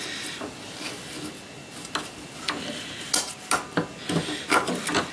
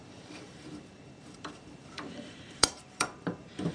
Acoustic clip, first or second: first